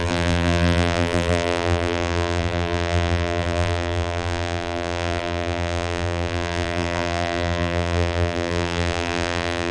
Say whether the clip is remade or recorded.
remade